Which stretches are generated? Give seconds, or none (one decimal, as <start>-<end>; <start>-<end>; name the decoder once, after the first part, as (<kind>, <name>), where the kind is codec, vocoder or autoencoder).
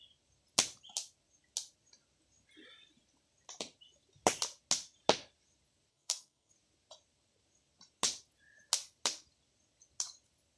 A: 5.9-6.5 (codec, SNAC)